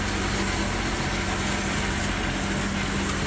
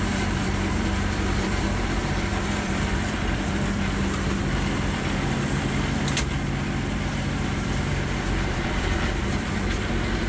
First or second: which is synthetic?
second